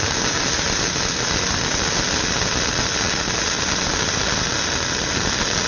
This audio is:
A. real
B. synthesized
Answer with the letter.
A